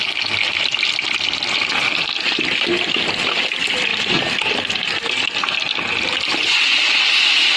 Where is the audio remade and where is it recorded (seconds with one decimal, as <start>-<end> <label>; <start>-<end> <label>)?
0.0-7.6 recorded